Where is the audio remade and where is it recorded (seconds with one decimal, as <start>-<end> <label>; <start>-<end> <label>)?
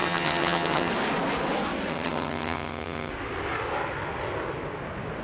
0.0-0.9 remade; 0.9-1.9 recorded; 1.9-3.1 remade; 3.1-5.2 recorded